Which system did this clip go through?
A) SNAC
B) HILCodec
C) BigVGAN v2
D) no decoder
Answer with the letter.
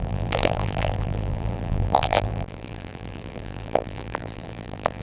C